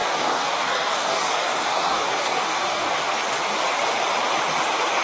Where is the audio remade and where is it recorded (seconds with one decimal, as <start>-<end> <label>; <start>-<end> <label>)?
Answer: 0.0-3.0 remade; 3.0-5.0 recorded